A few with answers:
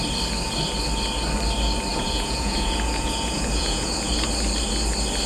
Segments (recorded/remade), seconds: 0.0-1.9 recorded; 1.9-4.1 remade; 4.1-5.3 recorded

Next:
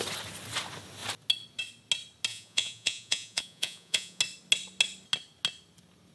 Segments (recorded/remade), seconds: 0.0-2.3 recorded; 2.3-4.2 remade; 4.2-6.1 recorded

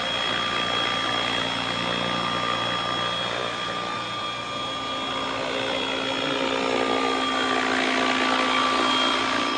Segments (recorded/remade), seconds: 0.0-9.6 recorded

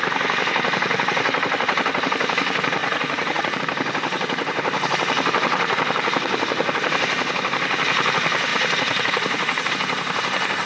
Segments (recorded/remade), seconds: 0.0-2.8 recorded; 2.8-3.6 remade; 3.6-8.5 recorded; 8.5-9.7 remade; 9.7-10.7 recorded